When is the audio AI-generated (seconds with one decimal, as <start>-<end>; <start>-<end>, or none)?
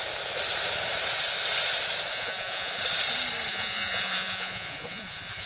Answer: 2.1-2.8; 3.5-5.5